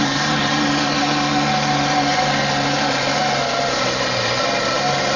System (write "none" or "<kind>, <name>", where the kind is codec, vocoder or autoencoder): none